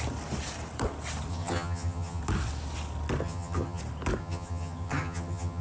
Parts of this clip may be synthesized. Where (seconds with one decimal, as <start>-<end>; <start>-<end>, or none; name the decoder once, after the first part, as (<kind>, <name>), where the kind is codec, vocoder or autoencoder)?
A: 1.3-2.2 (vocoder, HiFi-GAN); 3.2-3.8; 4.2-5.6